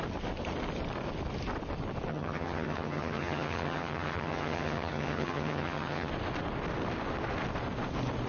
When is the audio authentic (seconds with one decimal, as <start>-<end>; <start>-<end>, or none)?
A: 0.0-2.1; 6.1-8.3